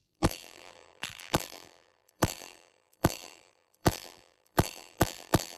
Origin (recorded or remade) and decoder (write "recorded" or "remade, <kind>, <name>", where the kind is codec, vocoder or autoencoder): remade, vocoder, BigVGAN v2